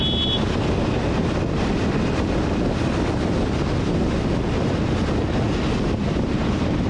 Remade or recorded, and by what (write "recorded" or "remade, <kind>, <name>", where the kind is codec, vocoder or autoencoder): recorded